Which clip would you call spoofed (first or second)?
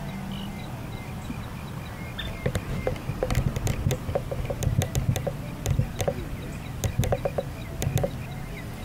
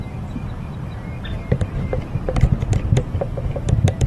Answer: second